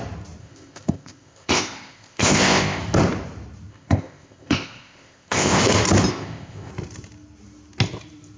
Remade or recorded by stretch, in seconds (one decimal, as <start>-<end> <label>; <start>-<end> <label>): 0.0-0.4 recorded; 0.4-2.8 remade; 2.8-3.7 recorded; 3.7-5.6 remade; 5.6-6.1 recorded; 6.1-6.7 remade; 6.7-8.4 recorded